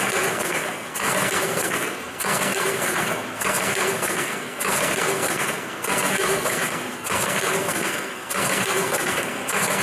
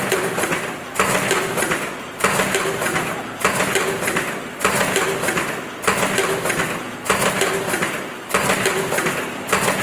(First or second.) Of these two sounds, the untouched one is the second